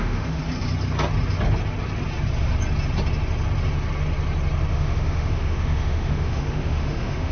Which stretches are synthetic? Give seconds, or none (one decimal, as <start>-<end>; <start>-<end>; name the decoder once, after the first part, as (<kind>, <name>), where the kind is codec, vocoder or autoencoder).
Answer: 0.0-0.4 (autoencoder, DAC-VAE); 4.7-7.3